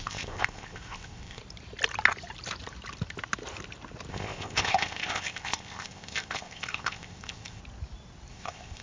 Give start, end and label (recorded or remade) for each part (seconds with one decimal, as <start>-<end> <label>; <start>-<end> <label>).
0.0-1.4 remade; 1.4-4.1 recorded; 4.1-7.6 remade; 7.6-8.3 recorded; 8.3-8.8 remade